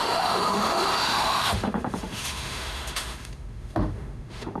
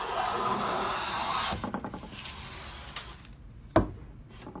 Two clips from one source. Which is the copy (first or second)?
first